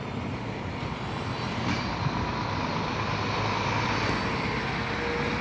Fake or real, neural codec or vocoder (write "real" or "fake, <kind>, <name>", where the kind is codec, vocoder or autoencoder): real